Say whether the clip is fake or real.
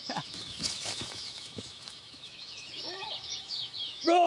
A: fake